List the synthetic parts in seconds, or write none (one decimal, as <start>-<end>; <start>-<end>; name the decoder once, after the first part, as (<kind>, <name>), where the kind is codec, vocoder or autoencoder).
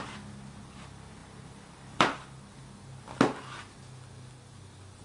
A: 1.2-2.6 (vocoder, BigVGAN v2)